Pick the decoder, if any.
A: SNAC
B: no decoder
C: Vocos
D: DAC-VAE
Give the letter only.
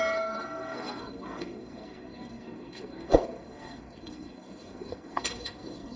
A